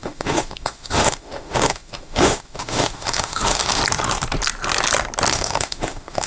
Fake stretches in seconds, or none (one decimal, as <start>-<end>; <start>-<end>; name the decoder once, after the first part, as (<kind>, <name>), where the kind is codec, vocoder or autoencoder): 0.0-3.8 (autoencoder, DAC-VAE); 5.3-6.3